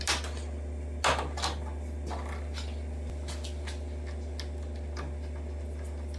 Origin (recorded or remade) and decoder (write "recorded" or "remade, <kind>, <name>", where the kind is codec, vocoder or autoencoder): recorded